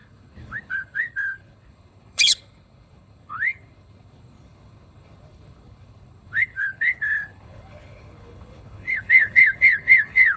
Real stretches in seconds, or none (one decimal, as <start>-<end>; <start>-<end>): none